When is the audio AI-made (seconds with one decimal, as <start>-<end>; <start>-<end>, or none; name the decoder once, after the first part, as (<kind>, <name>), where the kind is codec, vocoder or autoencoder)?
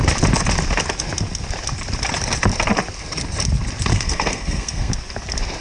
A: 3.9-4.9 (codec, SNAC)